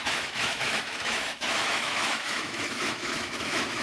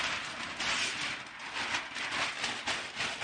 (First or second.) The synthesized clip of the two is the first